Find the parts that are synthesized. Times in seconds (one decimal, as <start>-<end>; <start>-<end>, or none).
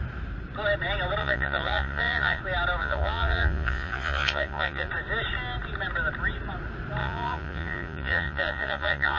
1.2-2.4; 2.8-4.9; 7.0-9.2